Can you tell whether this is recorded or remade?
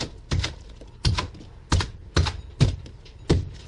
recorded